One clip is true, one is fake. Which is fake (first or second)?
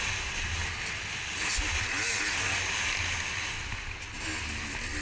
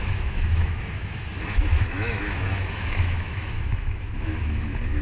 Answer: second